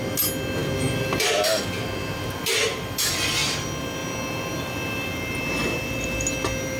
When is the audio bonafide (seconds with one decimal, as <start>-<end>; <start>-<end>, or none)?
0.0-0.6; 3.0-6.8